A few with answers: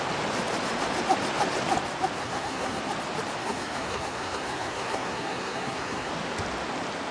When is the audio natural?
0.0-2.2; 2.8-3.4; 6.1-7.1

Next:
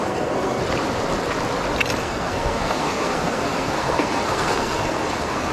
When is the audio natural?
0.6-2.0

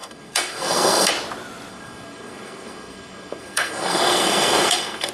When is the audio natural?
1.1-1.7